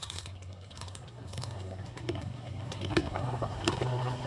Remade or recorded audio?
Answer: remade